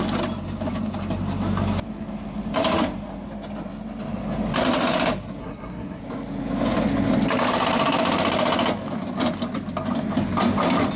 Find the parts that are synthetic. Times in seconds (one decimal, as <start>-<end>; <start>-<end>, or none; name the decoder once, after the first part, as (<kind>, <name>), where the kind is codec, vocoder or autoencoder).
5.4-6.0 (codec, SNAC)